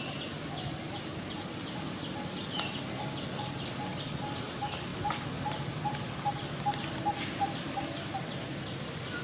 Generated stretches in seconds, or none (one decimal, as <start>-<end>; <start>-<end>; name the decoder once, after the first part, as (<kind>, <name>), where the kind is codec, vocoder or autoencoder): 3.9-4.5 (vocoder, BigVGAN v2); 4.9-8.3